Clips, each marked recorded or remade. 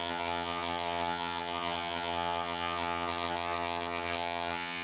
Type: remade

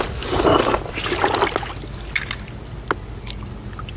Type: recorded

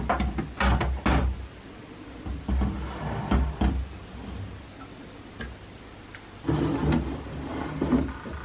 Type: recorded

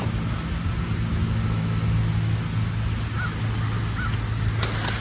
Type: recorded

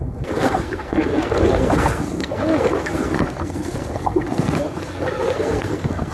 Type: remade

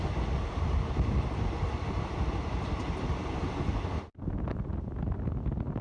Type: recorded